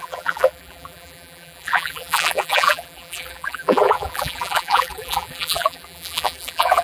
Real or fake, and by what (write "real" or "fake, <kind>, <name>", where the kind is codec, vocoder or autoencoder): fake, vocoder, BigVGAN v2